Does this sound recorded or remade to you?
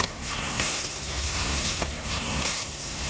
remade